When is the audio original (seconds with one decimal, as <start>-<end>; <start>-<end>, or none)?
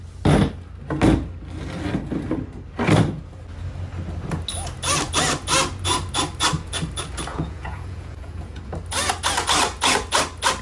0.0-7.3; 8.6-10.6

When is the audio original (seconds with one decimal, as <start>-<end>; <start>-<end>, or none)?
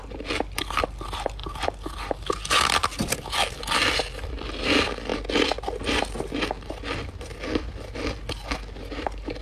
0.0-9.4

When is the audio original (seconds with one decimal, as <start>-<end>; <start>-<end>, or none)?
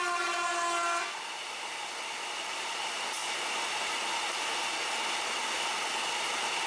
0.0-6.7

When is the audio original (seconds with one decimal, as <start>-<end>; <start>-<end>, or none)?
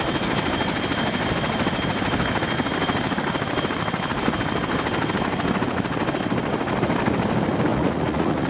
0.0-7.7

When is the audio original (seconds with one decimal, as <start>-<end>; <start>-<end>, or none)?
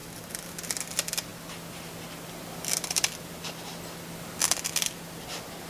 0.0-5.7